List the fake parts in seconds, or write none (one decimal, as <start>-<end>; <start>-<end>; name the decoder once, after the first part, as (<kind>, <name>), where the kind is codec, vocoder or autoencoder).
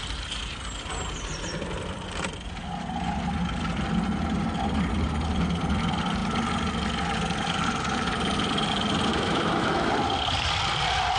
9.1-9.9 (autoencoder, DAC-VAE)